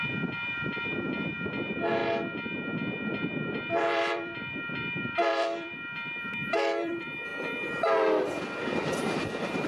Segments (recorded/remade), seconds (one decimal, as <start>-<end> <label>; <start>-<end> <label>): 0.0-2.0 remade; 2.0-3.1 recorded; 3.1-9.7 remade